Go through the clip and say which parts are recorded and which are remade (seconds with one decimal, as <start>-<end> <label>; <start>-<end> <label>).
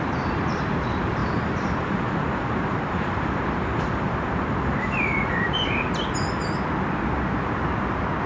0.0-1.2 recorded; 1.2-5.9 remade; 5.9-8.3 recorded